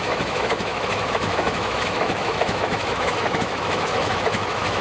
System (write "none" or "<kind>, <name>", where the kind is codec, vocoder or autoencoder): autoencoder, DAC-VAE